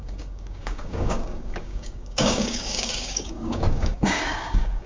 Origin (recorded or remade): remade